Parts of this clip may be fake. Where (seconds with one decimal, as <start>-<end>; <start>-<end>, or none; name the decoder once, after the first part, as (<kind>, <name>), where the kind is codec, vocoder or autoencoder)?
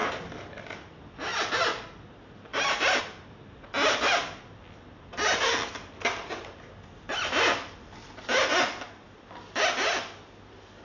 none